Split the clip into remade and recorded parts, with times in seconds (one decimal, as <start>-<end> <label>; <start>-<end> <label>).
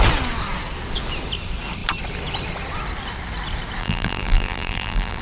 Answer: 0.0-3.8 recorded; 3.8-5.2 remade